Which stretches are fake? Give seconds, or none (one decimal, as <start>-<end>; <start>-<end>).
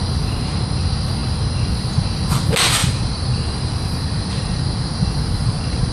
2.8-4.6; 5.4-5.9